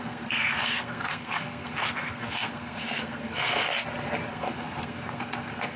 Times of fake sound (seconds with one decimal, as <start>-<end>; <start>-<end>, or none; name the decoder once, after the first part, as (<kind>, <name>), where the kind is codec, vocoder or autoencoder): 0.0-3.7 (codec, SNAC); 4.3-5.8